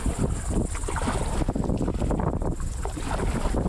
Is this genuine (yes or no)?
yes